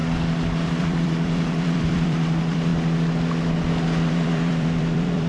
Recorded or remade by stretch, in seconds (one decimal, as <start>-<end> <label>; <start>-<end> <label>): 0.0-0.8 recorded; 0.8-2.7 remade; 2.7-4.1 recorded; 4.1-5.3 remade

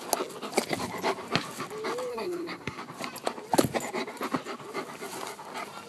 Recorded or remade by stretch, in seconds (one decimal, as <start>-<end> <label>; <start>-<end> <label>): 0.0-2.1 recorded; 2.1-2.8 remade; 2.8-5.9 recorded

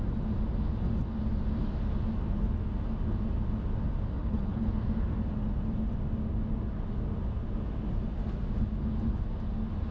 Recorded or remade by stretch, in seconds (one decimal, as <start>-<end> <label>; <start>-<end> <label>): 0.0-4.2 recorded; 4.2-4.7 remade; 4.7-9.9 recorded